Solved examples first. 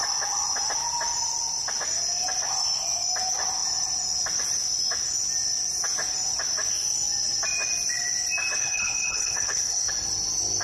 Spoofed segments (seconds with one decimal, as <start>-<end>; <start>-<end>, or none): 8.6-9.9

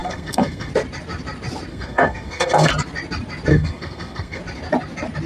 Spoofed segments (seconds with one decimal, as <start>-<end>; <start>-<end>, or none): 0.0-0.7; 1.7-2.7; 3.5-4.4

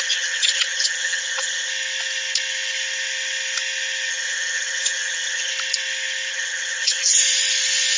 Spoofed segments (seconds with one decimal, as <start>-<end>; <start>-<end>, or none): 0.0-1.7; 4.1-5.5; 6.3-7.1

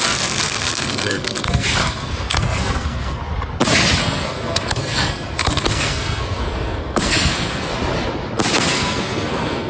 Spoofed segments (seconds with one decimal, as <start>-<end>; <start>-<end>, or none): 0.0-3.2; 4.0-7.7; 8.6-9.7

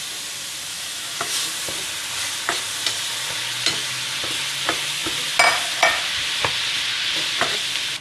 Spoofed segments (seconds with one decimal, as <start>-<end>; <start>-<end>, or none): 0.7-1.5

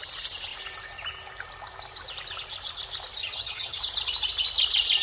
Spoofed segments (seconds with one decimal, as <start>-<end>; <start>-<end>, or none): 3.2-3.8

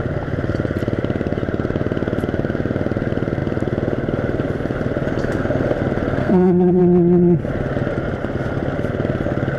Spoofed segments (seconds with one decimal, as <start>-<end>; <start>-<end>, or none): 6.2-6.8

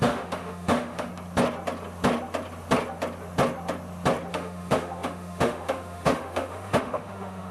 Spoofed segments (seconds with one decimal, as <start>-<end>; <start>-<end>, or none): 0.0-1.1; 4.3-7.5